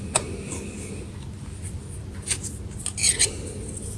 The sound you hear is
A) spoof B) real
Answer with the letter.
B